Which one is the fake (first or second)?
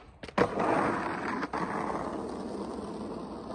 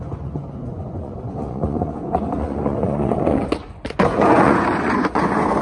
second